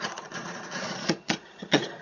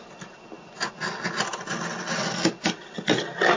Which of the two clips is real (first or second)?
second